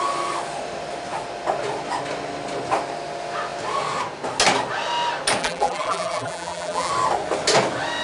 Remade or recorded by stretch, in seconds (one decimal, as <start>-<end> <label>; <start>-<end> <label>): 0.0-5.4 recorded; 5.4-6.9 remade; 6.9-8.0 recorded